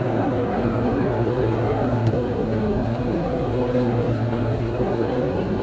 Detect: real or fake fake